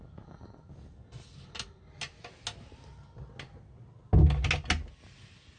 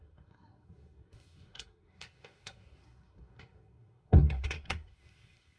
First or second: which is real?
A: first